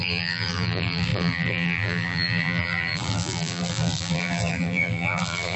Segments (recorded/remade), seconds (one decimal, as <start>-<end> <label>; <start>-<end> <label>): 0.0-5.6 remade